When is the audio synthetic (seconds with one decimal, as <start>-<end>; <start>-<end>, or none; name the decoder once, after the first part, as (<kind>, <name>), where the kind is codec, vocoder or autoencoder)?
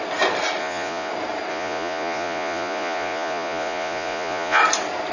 0.6-1.1 (vocoder, Vocos); 1.5-4.6